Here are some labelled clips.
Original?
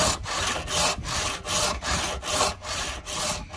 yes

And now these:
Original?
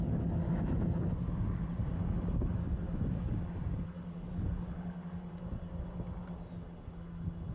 yes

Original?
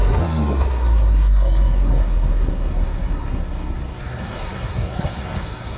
no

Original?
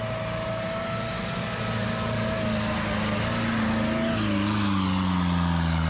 yes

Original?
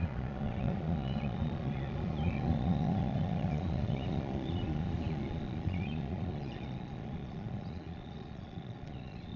no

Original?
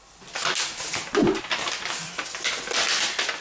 yes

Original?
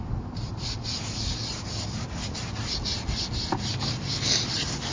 yes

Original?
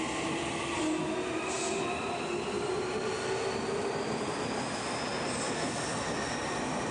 yes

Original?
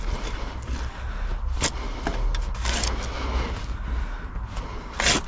yes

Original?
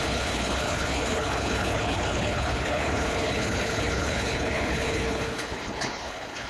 no